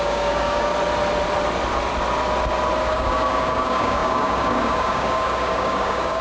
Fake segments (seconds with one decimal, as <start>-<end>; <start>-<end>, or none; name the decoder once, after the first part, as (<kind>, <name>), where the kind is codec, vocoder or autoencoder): 0.0-0.7 (codec, DAC); 2.8-6.2